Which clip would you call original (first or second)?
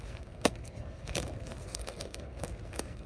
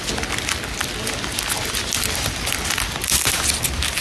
second